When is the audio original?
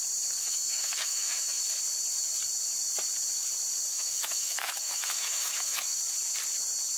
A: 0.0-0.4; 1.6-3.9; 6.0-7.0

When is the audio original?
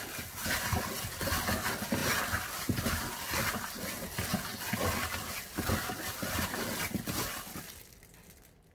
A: 0.0-8.7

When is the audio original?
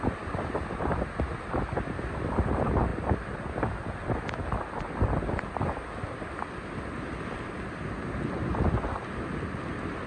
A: 0.0-10.1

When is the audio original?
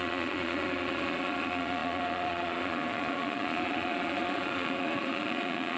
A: none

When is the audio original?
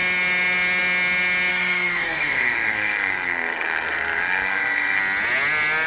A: 0.0-1.5; 5.0-5.9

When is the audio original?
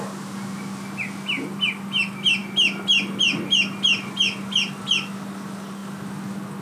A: 0.0-6.6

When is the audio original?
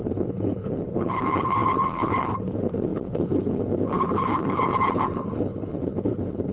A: none